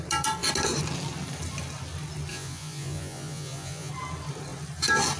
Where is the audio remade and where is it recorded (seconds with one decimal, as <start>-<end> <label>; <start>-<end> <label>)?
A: 0.0-2.3 recorded; 2.3-3.9 remade; 3.9-5.2 recorded